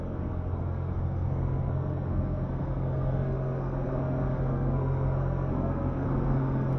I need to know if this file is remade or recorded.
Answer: remade